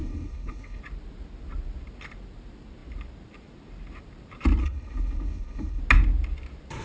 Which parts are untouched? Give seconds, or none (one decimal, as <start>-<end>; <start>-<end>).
0.8-4.6; 5.8-6.8